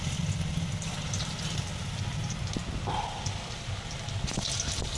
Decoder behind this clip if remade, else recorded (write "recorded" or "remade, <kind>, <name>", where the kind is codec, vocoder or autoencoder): recorded